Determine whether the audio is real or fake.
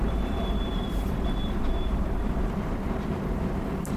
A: fake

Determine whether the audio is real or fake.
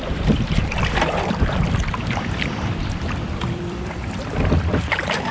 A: fake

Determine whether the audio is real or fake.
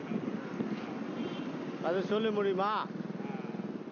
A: real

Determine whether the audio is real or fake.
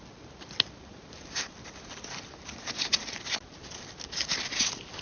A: real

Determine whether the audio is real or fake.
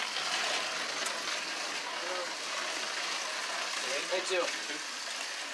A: real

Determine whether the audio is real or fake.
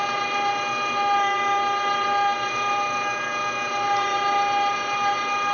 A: real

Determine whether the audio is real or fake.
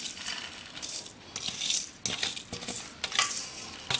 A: real